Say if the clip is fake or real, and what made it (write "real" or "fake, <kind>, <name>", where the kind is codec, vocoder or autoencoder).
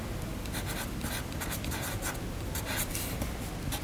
real